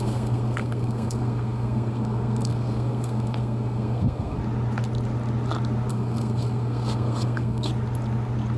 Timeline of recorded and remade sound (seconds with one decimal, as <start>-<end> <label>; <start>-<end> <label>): 0.0-4.4 remade; 4.4-5.9 recorded; 5.9-7.7 remade; 7.7-8.6 recorded